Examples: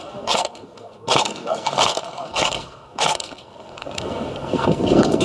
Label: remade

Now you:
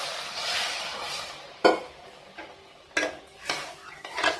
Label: recorded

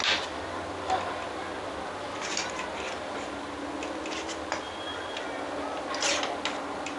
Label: recorded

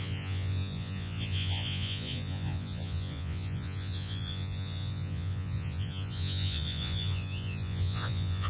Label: remade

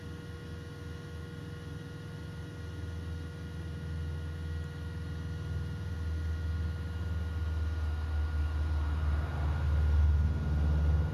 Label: recorded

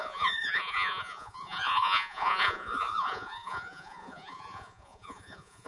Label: remade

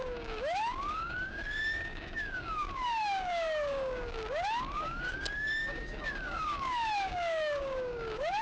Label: remade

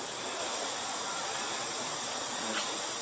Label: recorded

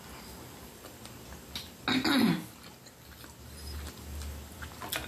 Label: recorded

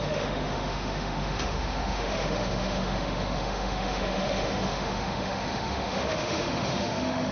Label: remade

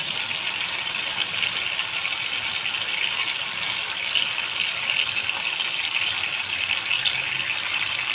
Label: recorded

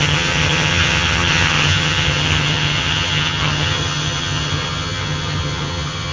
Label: remade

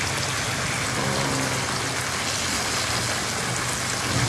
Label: recorded